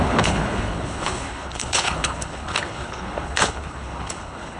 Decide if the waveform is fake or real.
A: fake